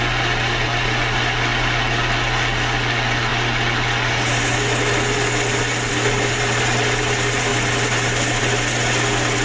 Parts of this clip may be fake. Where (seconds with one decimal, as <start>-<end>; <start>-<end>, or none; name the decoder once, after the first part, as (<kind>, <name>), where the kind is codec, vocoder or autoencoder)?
none